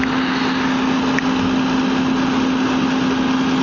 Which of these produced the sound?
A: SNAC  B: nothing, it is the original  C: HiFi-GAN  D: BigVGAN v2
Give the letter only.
B